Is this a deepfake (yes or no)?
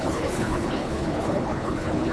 yes